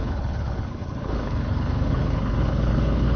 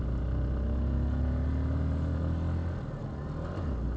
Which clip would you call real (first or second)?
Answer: second